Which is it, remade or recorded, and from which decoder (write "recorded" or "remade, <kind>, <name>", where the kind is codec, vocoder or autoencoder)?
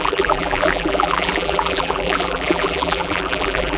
remade, vocoder, BigVGAN v2